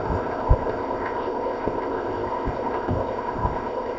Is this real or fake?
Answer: fake